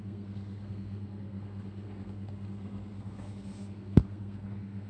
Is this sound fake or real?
fake